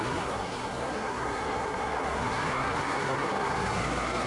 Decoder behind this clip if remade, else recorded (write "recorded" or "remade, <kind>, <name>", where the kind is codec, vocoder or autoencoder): remade, codec, SNAC